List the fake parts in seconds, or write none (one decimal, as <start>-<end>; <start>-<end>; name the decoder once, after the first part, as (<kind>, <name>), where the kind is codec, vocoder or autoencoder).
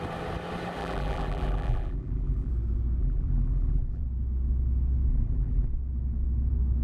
0.8-2.5 (vocoder, BigVGAN v2); 3.0-4.0; 5.1-5.7